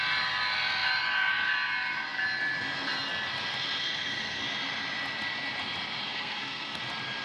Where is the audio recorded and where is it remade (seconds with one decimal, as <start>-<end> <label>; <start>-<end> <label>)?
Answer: 0.0-3.8 recorded; 3.8-4.4 remade; 4.4-6.0 recorded; 6.0-6.8 remade; 6.8-7.2 recorded